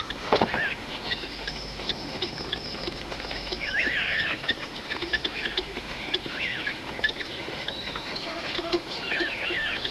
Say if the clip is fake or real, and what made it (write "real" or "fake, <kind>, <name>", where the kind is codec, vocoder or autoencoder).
fake, autoencoder, DAC-VAE